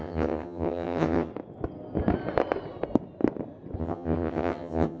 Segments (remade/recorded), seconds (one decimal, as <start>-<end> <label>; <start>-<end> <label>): 0.0-1.3 remade; 1.3-3.8 recorded; 3.8-5.0 remade